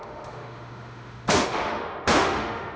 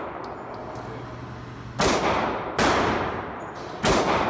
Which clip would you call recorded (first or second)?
second